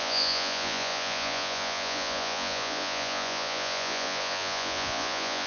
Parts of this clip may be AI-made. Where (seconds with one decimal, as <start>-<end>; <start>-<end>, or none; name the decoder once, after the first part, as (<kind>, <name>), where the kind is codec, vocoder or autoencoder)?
0.0-5.5 (vocoder, Vocos)